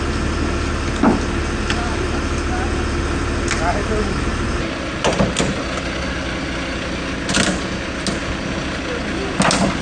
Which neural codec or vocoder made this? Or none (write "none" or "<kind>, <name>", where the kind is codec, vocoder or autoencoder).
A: none